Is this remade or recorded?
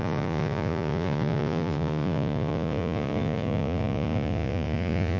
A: remade